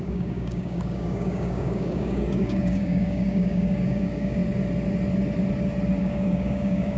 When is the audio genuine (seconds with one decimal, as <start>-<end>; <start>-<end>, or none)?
4.4-6.0